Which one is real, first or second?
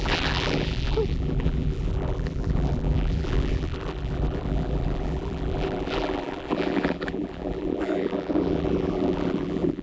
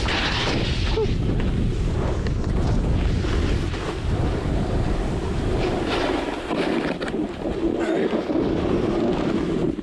second